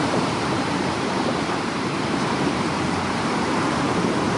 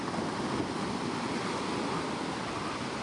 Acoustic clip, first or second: second